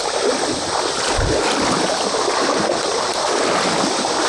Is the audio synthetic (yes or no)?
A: no